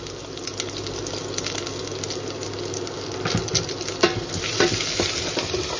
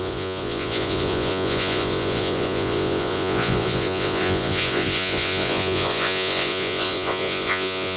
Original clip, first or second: first